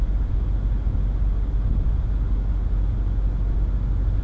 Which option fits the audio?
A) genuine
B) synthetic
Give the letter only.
A